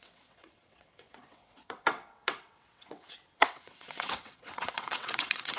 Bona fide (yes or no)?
no